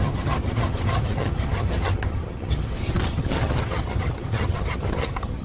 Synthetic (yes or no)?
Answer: yes